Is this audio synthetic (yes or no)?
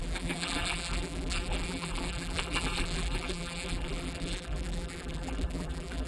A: yes